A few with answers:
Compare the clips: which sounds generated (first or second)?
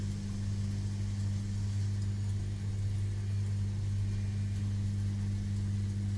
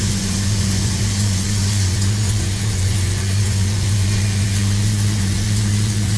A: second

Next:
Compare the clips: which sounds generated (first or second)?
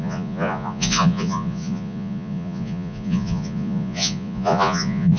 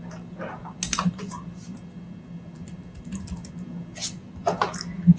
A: first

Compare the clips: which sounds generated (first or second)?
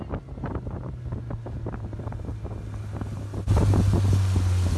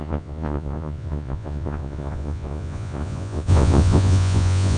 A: second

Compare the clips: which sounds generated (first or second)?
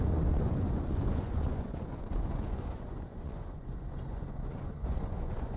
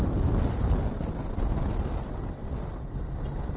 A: first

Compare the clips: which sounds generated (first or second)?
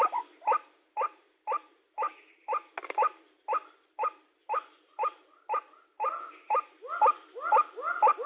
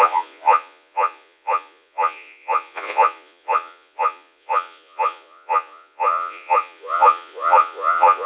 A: second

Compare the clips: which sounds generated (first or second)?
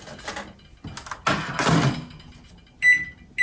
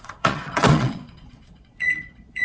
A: second